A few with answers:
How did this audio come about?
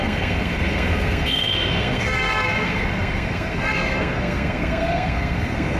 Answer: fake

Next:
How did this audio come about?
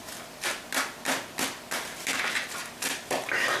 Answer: real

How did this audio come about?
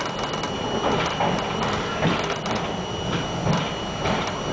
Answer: real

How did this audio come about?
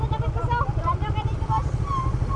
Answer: real